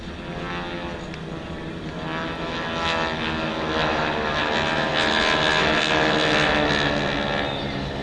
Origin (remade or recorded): recorded